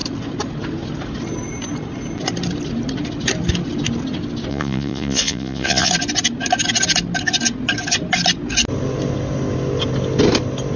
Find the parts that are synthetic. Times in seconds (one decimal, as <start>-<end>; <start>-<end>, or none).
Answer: 4.5-5.9